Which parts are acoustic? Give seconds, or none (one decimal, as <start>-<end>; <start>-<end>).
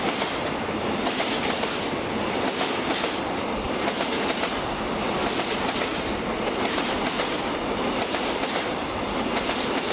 0.0-9.9